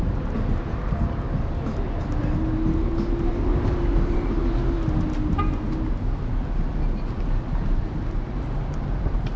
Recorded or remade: recorded